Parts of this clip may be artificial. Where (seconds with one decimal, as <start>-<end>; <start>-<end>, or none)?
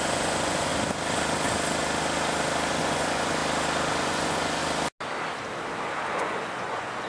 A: 0.0-0.7; 2.8-3.4; 4.0-4.6; 6.1-7.1